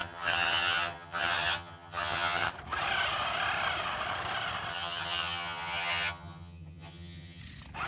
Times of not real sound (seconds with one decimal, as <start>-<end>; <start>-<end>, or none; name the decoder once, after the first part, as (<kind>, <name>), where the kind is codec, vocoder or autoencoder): 0.0-2.5 (vocoder, HiFi-GAN); 4.7-7.4